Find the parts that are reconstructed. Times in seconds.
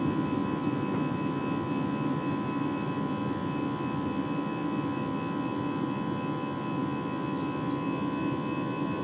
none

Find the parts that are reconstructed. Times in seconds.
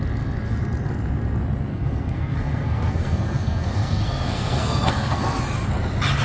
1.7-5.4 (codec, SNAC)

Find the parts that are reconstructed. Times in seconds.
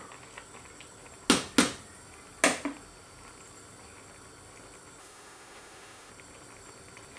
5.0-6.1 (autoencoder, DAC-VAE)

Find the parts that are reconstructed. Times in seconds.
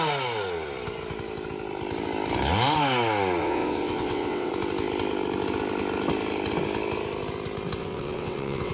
3.4-4.5 (vocoder, WaveNeXt); 7.8-8.7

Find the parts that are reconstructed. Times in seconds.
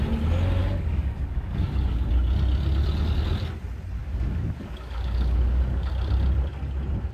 0.6-2.1 (codec, DAC); 4.0-5.9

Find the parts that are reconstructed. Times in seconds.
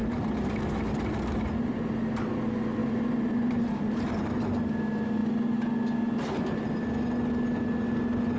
2.8-4.3 (vocoder, BigVGAN v2)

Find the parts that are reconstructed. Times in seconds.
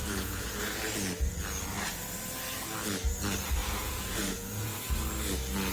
0.0-0.6 (vocoder, Vocos); 3.6-4.9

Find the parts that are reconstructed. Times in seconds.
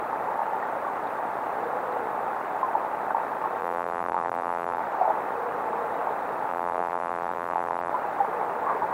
3.6-4.8 (vocoder, BigVGAN v2); 6.5-7.9